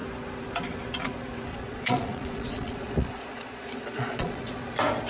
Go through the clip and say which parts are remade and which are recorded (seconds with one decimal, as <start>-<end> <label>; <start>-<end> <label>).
0.0-1.5 recorded; 1.5-4.6 remade; 4.6-5.1 recorded